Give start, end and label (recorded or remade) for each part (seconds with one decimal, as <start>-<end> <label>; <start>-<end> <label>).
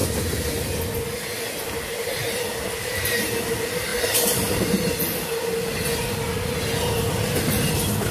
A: 0.0-3.9 recorded; 3.9-4.6 remade; 4.6-8.1 recorded